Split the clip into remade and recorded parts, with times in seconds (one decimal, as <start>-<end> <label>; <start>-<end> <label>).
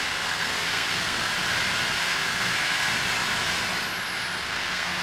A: 0.0-1.3 remade; 1.3-2.0 recorded; 2.0-2.9 remade; 2.9-4.4 recorded; 4.4-5.0 remade